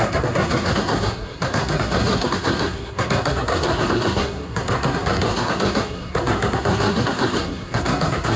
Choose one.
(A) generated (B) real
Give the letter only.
A